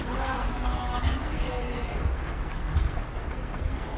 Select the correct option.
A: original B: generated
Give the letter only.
B